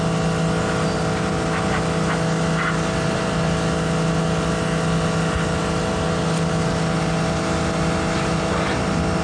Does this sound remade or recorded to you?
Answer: recorded